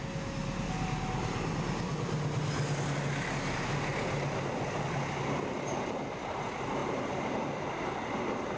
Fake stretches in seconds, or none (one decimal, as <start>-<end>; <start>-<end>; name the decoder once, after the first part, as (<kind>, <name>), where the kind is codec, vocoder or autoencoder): none